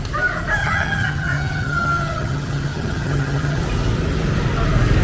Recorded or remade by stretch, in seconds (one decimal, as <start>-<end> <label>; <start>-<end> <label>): 0.0-0.6 recorded; 0.6-3.6 remade; 3.6-5.0 recorded